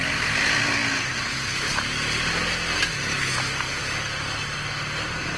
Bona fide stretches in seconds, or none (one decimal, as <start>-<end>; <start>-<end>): 0.0-5.4

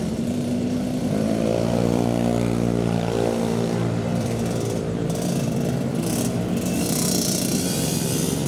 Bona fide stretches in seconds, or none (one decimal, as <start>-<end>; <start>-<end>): none

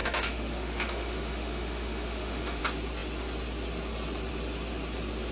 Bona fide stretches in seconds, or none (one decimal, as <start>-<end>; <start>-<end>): 2.6-5.3

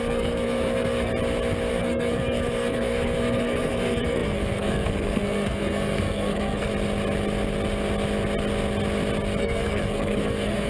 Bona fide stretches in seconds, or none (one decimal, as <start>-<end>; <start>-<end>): 1.1-1.7; 6.7-9.4